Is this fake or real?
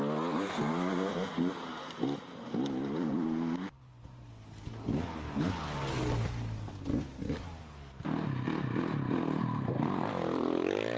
real